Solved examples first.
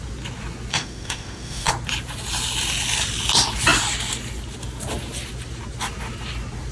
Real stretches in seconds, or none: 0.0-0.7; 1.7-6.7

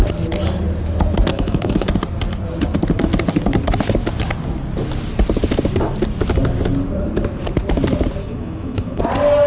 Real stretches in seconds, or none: 0.0-1.3; 1.9-8.2; 9.0-9.5

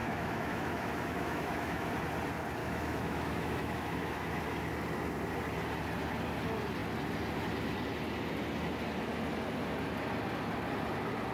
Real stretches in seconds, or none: 1.9-2.6; 4.4-11.3

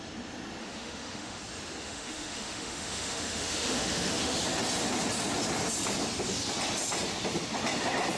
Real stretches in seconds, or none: 0.0-0.6; 1.4-1.8; 4.4-8.2

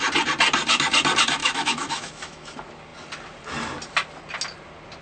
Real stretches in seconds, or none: 0.0-1.4; 2.5-5.0